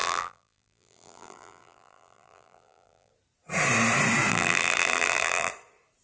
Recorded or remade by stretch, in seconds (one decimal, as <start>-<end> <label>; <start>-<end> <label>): 0.0-3.1 remade; 3.1-4.3 recorded; 4.3-5.5 remade; 5.5-6.0 recorded